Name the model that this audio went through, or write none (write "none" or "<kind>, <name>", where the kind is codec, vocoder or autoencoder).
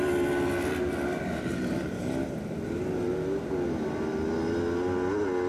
none